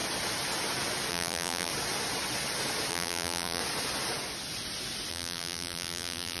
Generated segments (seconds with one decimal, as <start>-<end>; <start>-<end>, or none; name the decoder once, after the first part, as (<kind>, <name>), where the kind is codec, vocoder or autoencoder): 1.1-1.7 (vocoder, BigVGAN v2); 2.9-3.6; 5.1-6.4